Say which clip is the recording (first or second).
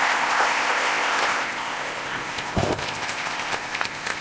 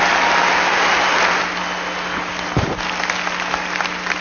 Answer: second